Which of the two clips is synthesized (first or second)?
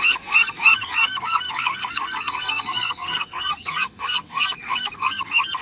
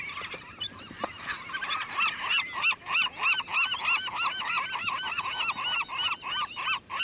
first